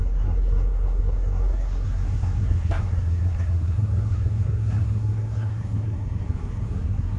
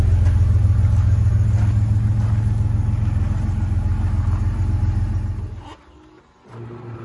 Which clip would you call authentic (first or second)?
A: second